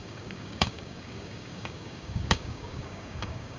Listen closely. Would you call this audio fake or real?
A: fake